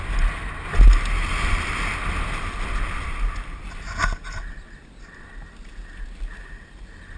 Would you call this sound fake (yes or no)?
no